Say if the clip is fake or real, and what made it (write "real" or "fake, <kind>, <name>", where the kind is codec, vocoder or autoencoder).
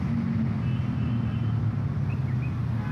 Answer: real